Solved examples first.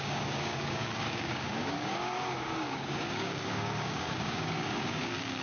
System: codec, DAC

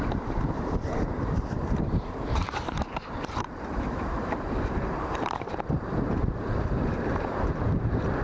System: vocoder, BigVGAN v2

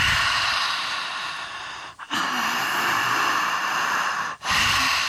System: vocoder, BigVGAN v2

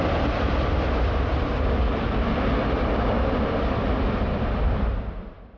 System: none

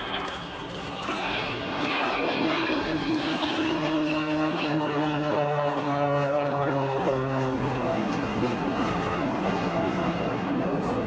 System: codec, SNAC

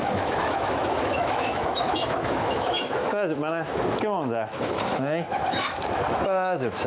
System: autoencoder, DAC-VAE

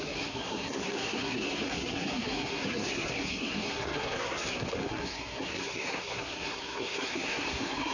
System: codec, SNAC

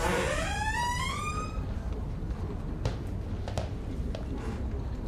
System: none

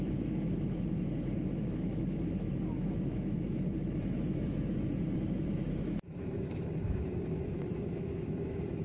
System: autoencoder, DAC-VAE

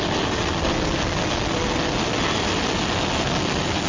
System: none